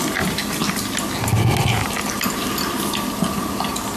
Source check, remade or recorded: recorded